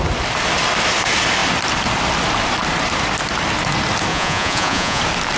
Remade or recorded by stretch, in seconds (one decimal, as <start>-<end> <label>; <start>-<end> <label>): 0.0-4.1 recorded; 4.1-5.0 remade; 5.0-5.4 recorded